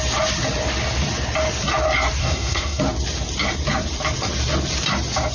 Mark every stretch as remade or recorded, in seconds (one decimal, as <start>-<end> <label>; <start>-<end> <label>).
0.0-2.2 recorded; 2.2-2.8 remade; 2.8-5.3 recorded